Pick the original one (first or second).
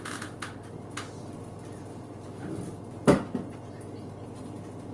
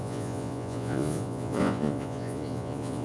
first